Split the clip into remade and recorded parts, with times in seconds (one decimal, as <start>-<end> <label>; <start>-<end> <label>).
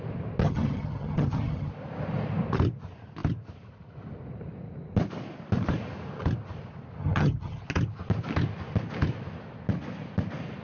0.0-0.4 recorded; 0.4-1.7 remade; 1.7-7.0 recorded; 7.0-7.6 remade; 7.6-10.6 recorded